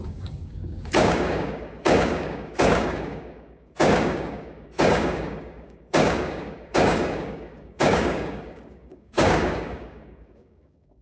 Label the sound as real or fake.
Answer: fake